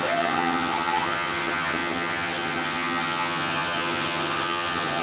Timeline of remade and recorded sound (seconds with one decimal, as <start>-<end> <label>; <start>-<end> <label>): 0.0-5.0 remade